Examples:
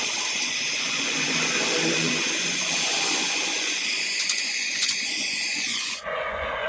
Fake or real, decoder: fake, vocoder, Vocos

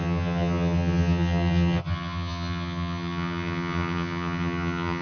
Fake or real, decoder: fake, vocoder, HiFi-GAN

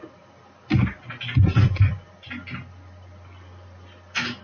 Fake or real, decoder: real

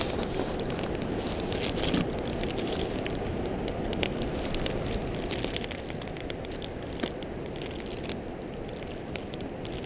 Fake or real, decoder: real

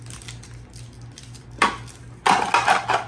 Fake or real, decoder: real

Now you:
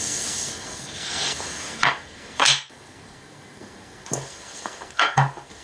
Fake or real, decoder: fake, codec, SNAC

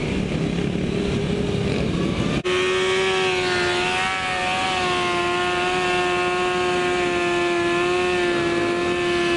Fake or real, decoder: real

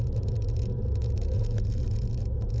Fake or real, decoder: fake, vocoder, Vocos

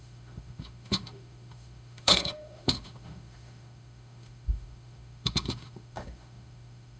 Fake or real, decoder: fake, autoencoder, DAC-VAE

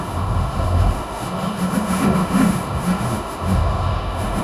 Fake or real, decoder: fake, autoencoder, DAC-VAE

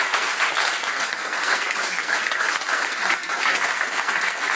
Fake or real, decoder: fake, codec, SNAC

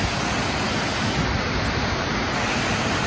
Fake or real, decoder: real